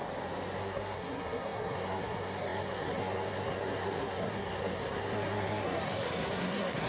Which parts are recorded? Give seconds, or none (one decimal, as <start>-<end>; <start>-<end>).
0.0-0.6